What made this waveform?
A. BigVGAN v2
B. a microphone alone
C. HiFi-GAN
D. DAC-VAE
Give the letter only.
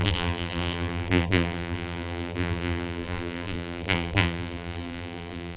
A